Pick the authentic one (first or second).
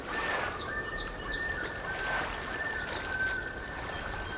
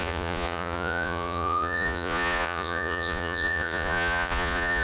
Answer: first